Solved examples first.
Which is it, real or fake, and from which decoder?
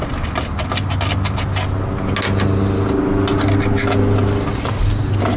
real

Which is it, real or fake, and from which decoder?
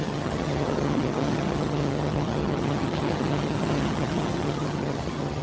fake, vocoder, HiFi-GAN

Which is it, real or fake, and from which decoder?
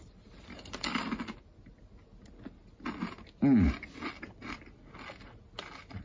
real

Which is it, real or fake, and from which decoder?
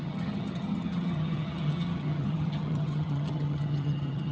fake, vocoder, HiFi-GAN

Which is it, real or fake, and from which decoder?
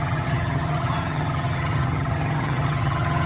fake, vocoder, HiFi-GAN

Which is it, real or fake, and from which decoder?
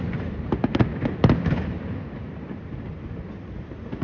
real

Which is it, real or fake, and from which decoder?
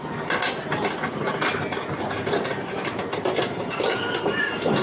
real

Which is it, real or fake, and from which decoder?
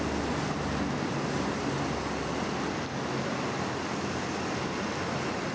real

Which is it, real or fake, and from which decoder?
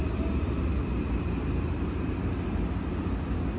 real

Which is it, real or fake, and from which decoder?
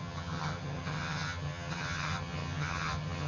fake, vocoder, HiFi-GAN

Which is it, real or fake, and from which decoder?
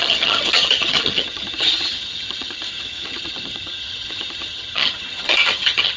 fake, vocoder, HiFi-GAN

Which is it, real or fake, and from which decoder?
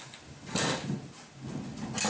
real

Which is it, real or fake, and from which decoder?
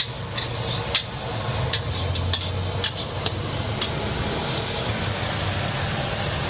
real